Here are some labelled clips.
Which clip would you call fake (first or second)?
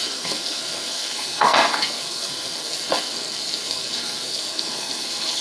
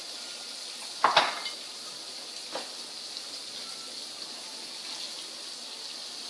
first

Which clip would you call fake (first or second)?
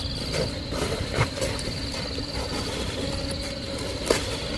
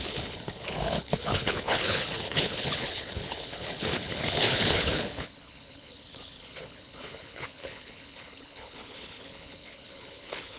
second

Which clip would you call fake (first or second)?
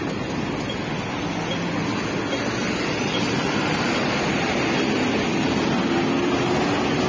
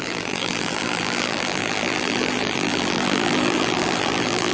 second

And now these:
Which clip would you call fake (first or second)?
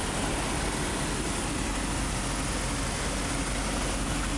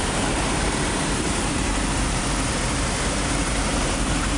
second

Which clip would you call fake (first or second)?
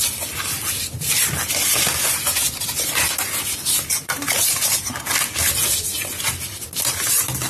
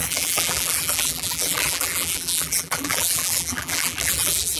second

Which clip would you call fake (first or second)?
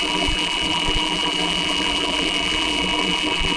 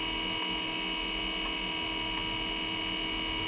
first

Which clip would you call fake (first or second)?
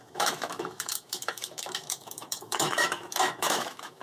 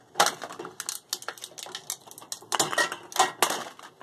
first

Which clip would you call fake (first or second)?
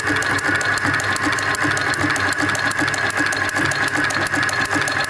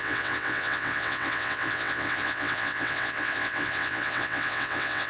second